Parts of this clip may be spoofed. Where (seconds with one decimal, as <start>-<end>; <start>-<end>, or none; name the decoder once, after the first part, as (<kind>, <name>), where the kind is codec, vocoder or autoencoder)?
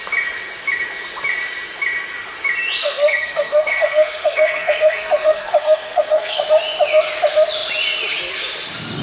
2.8-6.4 (codec, SNAC)